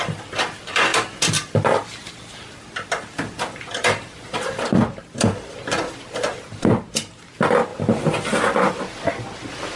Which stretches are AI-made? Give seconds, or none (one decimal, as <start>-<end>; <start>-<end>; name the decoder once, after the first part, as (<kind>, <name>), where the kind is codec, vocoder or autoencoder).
3.8-5.0 (vocoder, BigVGAN v2); 7.7-8.8